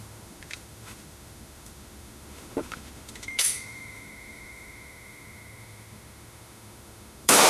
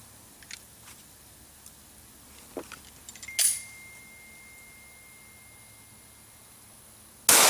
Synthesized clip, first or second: first